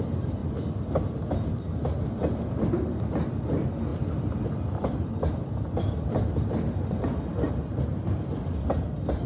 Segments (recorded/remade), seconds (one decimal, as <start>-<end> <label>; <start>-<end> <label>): 0.0-0.4 recorded; 0.4-1.0 remade; 1.0-7.3 recorded; 7.3-8.3 remade; 8.3-9.3 recorded